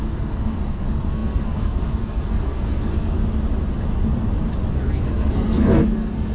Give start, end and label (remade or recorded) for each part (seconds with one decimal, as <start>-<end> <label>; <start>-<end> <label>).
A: 0.0-3.2 remade; 3.2-4.7 recorded; 4.7-6.3 remade